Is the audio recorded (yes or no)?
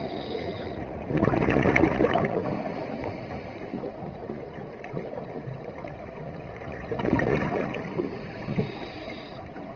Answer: no